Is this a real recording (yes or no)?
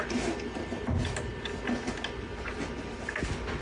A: yes